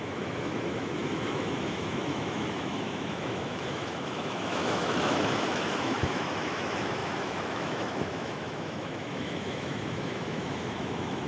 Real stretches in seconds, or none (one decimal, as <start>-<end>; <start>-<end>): none